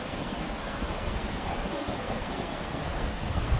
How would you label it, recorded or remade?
remade